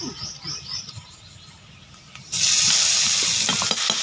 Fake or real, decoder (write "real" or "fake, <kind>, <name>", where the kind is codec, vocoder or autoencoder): real